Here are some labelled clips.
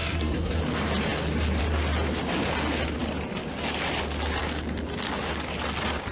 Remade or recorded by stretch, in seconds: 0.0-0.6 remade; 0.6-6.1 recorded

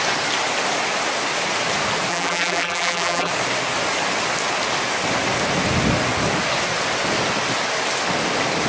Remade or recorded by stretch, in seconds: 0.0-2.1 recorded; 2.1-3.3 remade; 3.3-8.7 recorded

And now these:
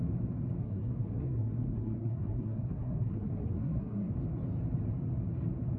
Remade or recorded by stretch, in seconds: 0.0-0.6 recorded; 0.6-4.1 remade; 4.1-5.8 recorded

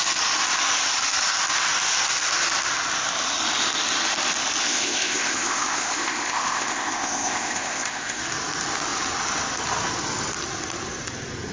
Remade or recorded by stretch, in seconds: 0.0-4.6 recorded; 4.6-8.2 remade; 8.2-11.5 recorded